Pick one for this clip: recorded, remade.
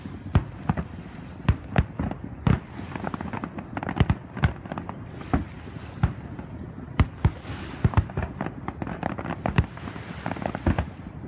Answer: recorded